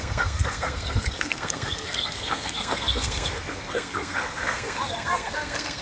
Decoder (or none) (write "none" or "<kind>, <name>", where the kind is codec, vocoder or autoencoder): codec, SNAC